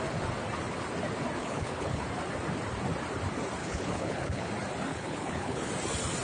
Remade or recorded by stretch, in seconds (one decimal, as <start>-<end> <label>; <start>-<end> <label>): 0.0-1.4 recorded; 1.4-2.0 remade; 2.0-3.6 recorded; 3.6-4.5 remade; 4.5-4.9 recorded; 4.9-5.7 remade; 5.7-6.2 recorded